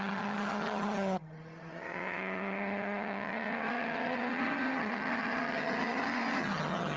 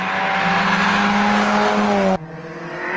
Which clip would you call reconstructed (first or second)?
first